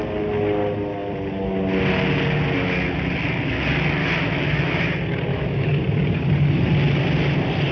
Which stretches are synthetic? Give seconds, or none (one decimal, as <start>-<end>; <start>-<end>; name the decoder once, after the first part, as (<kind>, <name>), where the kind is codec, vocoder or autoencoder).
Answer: 4.0-4.8 (autoencoder, DAC-VAE); 5.3-5.8